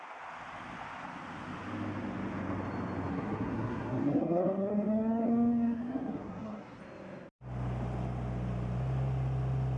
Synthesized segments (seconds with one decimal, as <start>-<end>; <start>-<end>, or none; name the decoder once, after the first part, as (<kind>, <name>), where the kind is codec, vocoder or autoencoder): 3.1-6.8 (codec, SNAC)